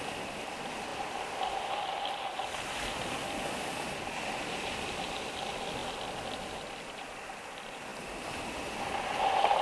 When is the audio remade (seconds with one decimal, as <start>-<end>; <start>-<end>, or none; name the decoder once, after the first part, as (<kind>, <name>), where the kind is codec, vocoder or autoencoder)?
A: none